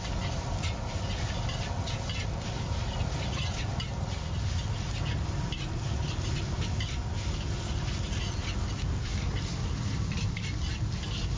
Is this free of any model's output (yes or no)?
yes